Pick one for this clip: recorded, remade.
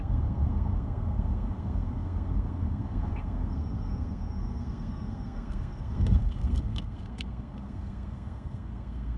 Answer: remade